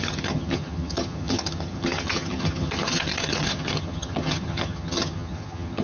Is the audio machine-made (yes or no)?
yes